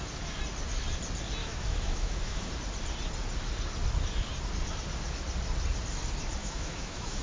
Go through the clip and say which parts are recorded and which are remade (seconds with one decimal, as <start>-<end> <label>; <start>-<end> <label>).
0.0-1.4 recorded; 1.4-2.5 remade; 2.5-6.4 recorded; 6.4-7.2 remade